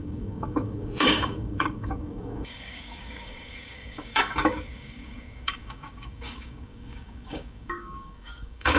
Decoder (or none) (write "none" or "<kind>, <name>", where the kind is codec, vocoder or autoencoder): codec, DAC